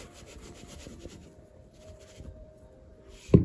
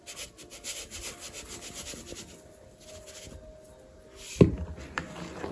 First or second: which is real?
second